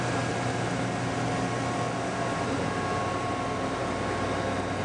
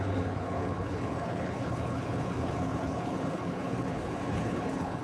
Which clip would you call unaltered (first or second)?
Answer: first